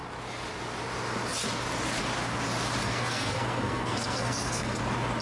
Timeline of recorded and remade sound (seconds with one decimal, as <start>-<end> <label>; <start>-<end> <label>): 0.0-2.8 recorded; 2.8-4.8 remade; 4.8-5.2 recorded